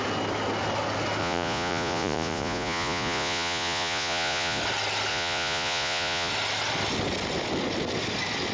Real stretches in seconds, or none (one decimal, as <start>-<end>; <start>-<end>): 0.0-1.2; 4.6-5.1; 6.3-8.5